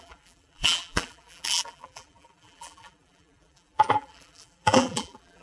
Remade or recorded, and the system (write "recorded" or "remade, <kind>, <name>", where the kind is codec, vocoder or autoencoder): remade, vocoder, BigVGAN v2